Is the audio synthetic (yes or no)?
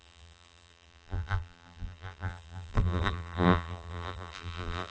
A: yes